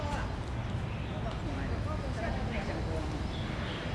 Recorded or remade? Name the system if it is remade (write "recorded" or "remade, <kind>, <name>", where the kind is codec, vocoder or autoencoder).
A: recorded